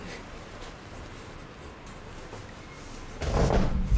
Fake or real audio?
real